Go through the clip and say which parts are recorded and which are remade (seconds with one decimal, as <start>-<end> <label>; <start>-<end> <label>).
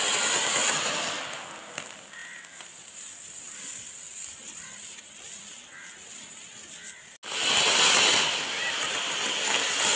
0.0-10.0 recorded